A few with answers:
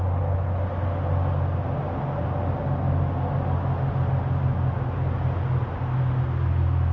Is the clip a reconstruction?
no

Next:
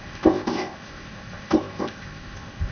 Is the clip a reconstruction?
yes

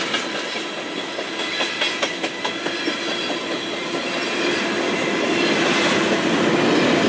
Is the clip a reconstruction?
no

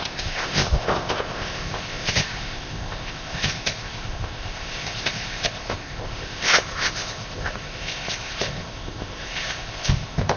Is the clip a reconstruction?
yes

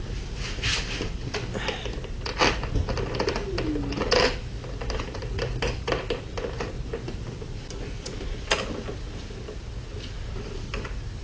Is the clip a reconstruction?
no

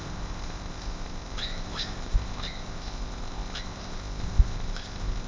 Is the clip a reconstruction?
yes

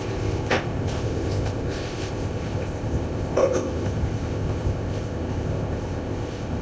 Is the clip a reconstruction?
yes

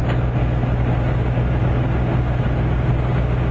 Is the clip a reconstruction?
no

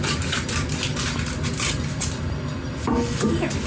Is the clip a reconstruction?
no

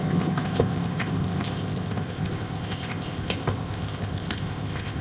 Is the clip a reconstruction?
yes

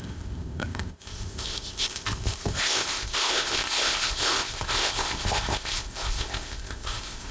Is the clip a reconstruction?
yes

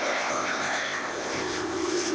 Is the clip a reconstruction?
yes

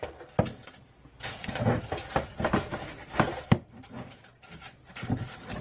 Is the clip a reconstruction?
no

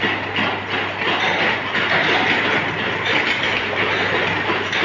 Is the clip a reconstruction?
no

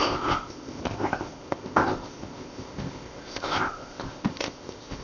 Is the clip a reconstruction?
yes